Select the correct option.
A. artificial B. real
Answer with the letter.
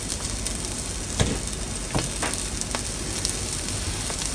B